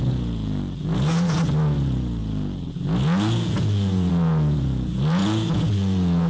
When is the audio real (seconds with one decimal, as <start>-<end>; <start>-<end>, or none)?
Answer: none